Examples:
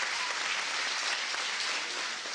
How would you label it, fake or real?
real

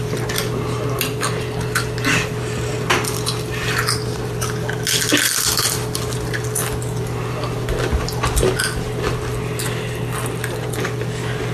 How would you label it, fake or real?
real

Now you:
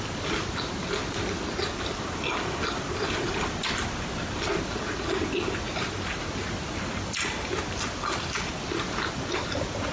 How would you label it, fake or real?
real